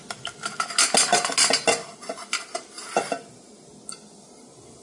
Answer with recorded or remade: recorded